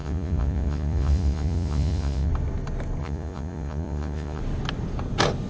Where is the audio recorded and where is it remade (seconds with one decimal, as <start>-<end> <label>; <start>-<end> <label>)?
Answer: 0.0-2.3 remade; 2.3-3.0 recorded; 3.0-4.4 remade; 4.4-5.5 recorded